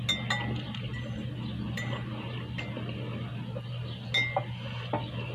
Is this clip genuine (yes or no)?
yes